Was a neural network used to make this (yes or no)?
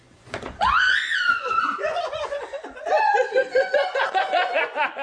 yes